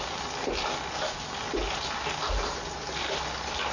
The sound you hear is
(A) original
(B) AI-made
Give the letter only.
A